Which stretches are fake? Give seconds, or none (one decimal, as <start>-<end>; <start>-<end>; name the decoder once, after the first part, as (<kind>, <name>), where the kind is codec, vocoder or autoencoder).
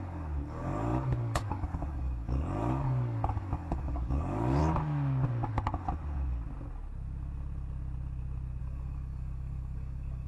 0.0-4.6 (codec, DAC); 8.6-10.3